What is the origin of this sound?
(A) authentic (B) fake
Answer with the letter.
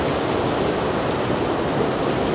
B